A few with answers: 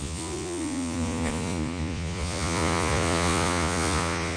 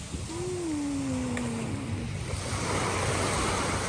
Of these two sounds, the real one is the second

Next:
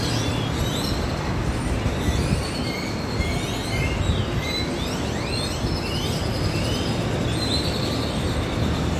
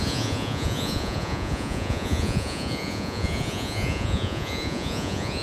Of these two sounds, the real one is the first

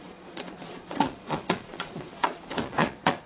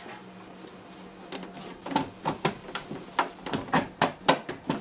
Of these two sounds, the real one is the second